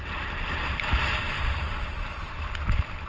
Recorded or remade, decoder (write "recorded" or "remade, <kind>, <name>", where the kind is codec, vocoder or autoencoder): remade, vocoder, BigVGAN v2